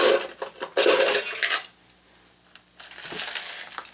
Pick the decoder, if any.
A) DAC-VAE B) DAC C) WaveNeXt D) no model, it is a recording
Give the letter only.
D